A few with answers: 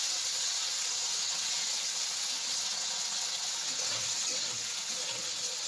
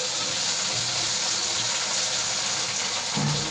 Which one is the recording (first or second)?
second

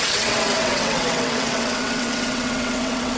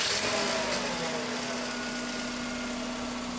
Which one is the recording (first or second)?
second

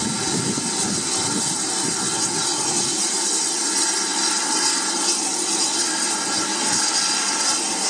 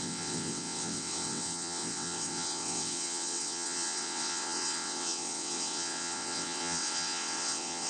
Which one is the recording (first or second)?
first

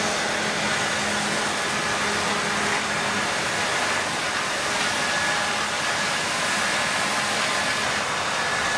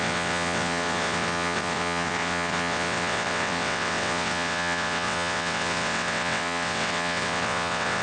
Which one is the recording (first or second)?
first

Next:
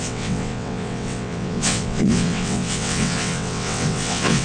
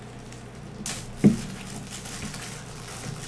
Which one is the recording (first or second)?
second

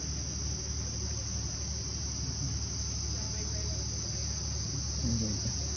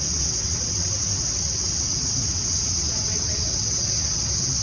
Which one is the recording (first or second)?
first